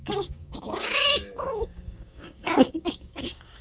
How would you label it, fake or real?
fake